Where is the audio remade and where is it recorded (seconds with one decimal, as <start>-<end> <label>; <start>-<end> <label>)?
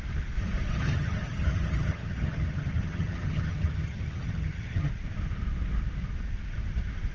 0.0-0.8 recorded; 0.8-4.9 remade; 4.9-7.1 recorded